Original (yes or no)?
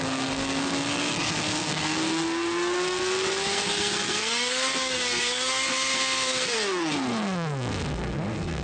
no